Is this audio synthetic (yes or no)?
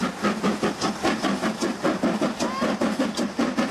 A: no